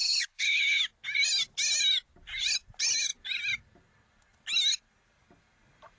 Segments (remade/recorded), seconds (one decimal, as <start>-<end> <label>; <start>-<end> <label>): 0.0-0.8 remade; 0.8-6.0 recorded